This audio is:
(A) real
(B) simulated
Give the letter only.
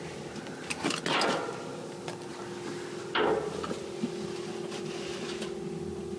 A